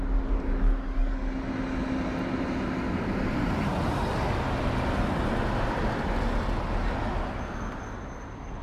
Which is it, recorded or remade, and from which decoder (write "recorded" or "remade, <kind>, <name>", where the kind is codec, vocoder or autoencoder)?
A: recorded